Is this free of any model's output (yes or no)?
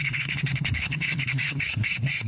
no